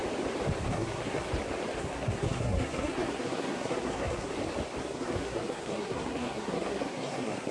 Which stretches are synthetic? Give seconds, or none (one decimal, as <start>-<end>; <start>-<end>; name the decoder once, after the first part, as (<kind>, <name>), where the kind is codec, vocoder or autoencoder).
0.7-1.3 (codec, SNAC); 1.8-4.3; 4.8-7.5